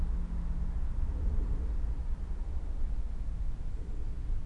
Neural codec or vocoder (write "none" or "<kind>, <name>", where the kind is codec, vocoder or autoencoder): none